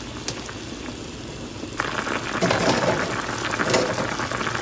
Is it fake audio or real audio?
real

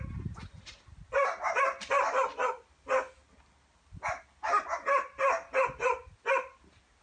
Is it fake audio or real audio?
real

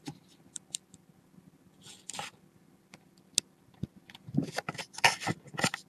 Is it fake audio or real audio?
real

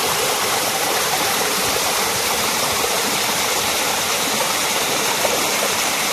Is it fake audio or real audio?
fake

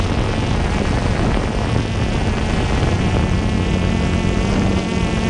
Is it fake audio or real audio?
real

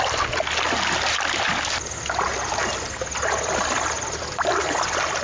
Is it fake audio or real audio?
real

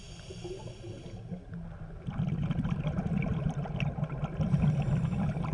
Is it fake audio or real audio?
real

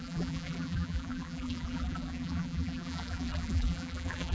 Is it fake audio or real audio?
fake